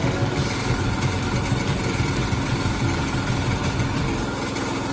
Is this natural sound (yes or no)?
yes